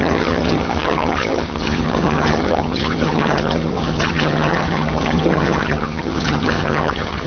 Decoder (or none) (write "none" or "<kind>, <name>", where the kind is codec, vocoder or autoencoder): vocoder, HiFi-GAN